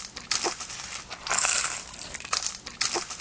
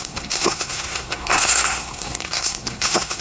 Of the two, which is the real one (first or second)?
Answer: first